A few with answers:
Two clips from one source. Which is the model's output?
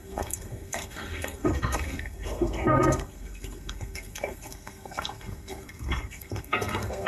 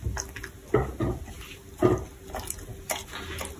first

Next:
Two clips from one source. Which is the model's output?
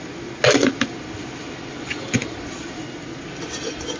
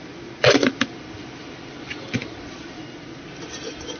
second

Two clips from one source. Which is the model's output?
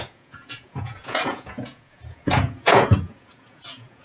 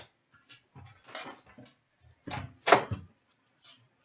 first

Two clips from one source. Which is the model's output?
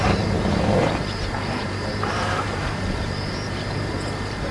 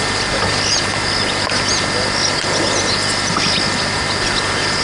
first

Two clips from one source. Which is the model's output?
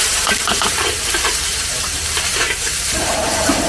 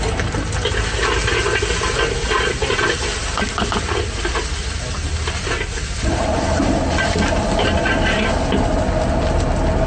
first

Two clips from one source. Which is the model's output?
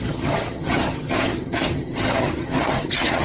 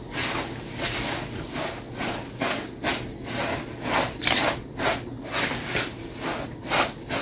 first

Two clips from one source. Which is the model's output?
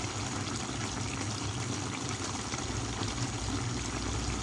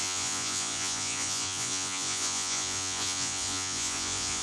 second